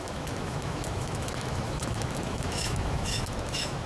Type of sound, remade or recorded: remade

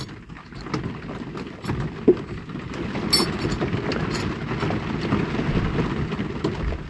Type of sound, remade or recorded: recorded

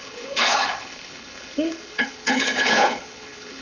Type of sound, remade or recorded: remade